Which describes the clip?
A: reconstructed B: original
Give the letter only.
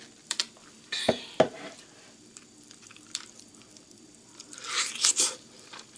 A